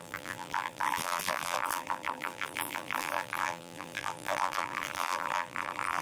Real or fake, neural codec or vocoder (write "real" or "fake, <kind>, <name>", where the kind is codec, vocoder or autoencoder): fake, vocoder, BigVGAN v2